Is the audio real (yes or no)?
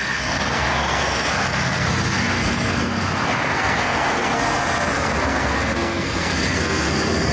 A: no